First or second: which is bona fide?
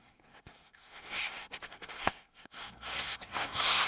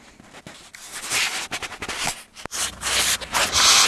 second